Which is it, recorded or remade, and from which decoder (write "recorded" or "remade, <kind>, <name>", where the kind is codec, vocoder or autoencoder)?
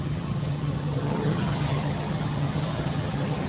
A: remade, vocoder, HiFi-GAN